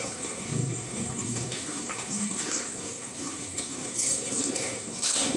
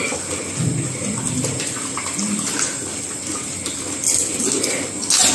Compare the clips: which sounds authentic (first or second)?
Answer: second